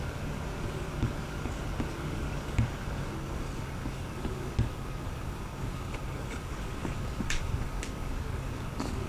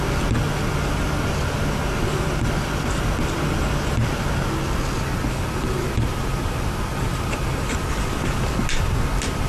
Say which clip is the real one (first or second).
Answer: second